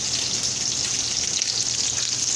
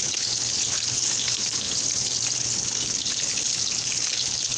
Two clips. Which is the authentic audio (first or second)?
first